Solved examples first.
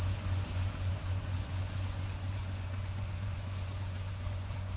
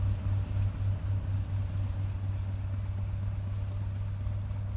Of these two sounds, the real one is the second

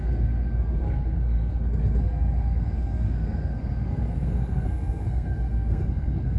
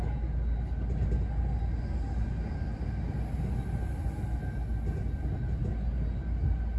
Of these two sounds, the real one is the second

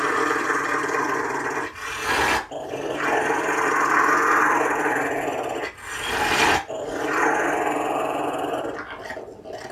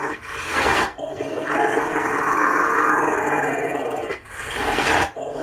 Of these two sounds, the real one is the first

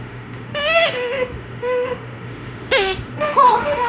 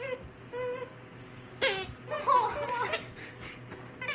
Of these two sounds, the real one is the second